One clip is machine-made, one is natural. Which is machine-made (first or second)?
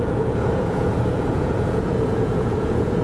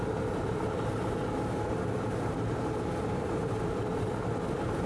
first